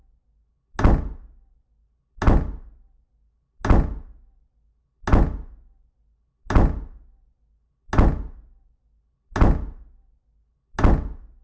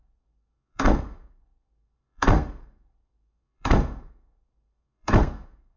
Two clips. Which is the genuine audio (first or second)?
first